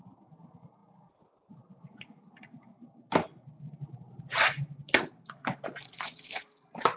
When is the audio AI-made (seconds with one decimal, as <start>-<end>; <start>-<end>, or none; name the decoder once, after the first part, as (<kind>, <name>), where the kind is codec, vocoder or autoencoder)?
none